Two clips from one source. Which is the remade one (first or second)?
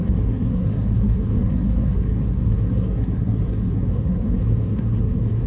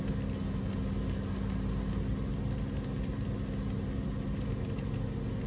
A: first